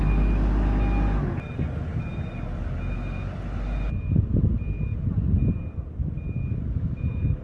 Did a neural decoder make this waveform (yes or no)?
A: no